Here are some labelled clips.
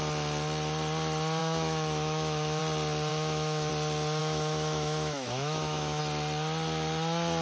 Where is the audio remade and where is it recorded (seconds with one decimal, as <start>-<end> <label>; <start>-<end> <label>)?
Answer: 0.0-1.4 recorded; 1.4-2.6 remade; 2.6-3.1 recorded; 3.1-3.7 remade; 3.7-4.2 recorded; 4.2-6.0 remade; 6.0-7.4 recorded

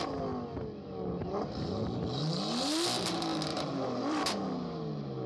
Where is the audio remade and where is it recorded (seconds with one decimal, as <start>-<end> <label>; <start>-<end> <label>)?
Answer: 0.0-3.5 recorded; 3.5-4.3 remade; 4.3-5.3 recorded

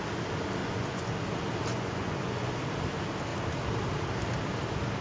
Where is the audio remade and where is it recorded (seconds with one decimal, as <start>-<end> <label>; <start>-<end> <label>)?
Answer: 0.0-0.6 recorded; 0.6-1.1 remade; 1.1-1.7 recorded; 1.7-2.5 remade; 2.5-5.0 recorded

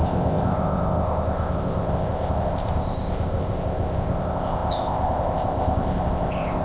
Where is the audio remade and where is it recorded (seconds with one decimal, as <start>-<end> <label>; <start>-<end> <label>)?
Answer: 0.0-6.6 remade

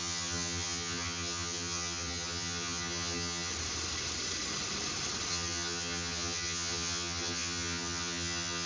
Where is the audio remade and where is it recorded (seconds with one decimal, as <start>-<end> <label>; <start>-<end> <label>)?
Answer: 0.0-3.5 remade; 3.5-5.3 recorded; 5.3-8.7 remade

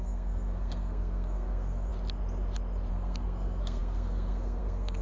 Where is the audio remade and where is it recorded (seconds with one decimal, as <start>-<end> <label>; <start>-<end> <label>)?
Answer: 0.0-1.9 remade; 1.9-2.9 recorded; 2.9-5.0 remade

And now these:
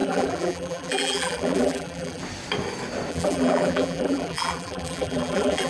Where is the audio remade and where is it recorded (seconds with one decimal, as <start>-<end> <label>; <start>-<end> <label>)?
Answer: 0.0-2.2 remade; 2.2-3.1 recorded; 3.1-5.7 remade